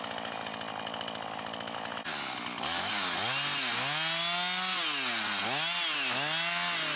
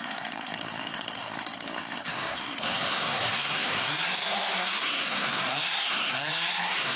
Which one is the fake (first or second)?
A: second